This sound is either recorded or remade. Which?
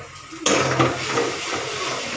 recorded